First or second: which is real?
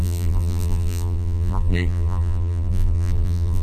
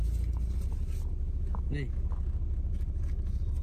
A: second